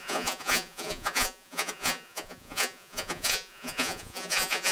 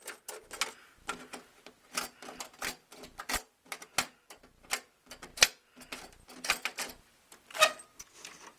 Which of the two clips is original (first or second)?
second